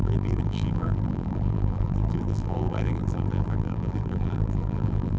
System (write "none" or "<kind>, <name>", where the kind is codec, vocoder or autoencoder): vocoder, BigVGAN v2